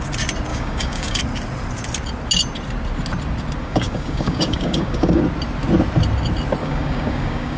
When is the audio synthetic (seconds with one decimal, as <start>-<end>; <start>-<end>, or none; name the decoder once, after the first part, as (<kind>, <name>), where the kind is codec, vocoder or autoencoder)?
0.5-1.2 (codec, DAC); 3.6-5.2; 6.6-7.6